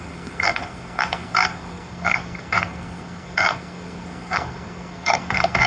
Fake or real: fake